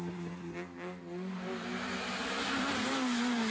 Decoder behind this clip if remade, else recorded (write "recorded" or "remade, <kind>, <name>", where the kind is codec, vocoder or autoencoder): recorded